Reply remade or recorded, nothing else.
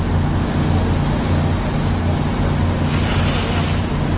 recorded